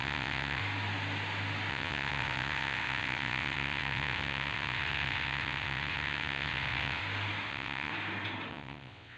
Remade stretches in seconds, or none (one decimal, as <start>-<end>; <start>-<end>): 0.0-0.6; 1.7-7.0; 7.5-7.9; 8.5-9.2

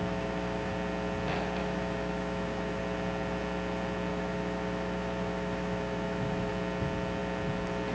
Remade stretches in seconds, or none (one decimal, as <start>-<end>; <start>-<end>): 0.0-0.7; 1.6-2.8; 4.1-6.5

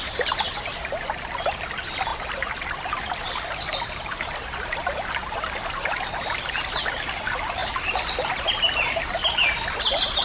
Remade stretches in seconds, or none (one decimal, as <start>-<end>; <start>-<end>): none

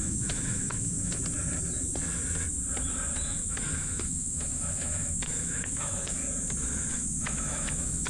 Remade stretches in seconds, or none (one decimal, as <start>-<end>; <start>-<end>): 0.0-1.2; 3.2-6.2; 6.9-8.1

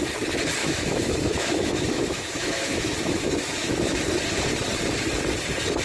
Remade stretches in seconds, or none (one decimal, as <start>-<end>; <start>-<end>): 0.6-4.0

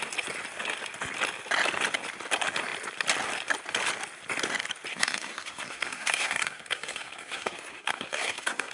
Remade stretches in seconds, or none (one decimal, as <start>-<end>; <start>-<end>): 4.9-8.7